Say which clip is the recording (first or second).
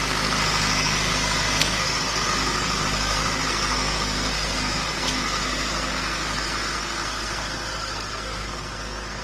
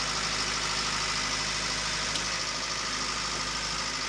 second